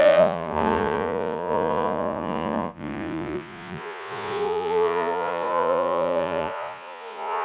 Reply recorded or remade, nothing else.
remade